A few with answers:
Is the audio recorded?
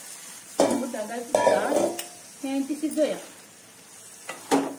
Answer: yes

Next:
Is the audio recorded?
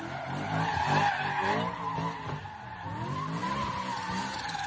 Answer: yes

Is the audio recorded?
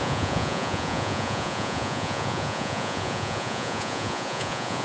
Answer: no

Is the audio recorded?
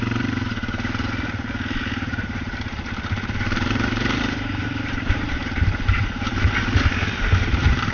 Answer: no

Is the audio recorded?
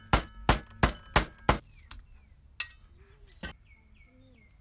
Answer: yes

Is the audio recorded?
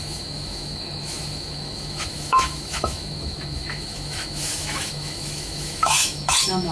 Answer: no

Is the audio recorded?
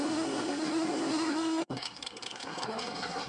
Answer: no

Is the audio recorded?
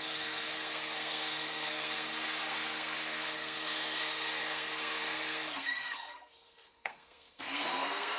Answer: no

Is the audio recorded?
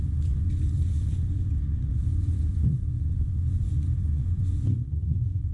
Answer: no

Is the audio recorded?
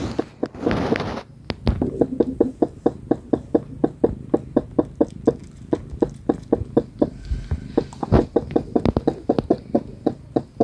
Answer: yes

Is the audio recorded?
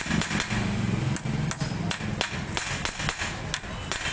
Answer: yes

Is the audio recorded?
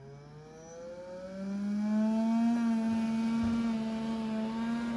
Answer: yes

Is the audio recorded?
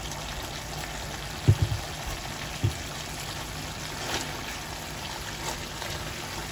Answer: yes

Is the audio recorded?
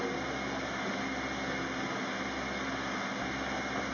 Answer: yes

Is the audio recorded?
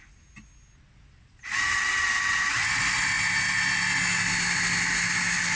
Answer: yes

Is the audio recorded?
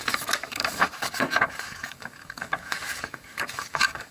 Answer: no